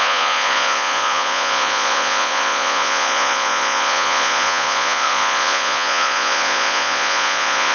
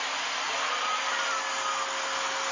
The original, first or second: second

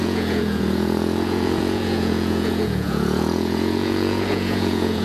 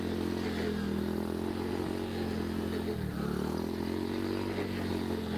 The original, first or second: second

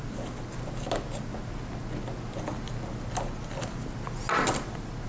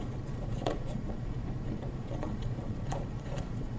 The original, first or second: first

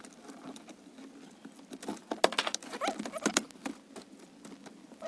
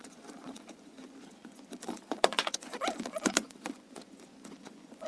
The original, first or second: first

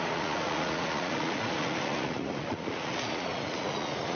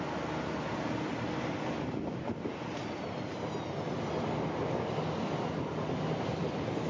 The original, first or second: second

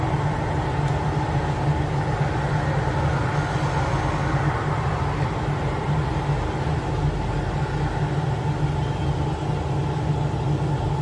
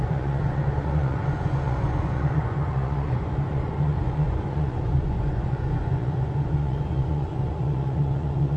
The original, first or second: first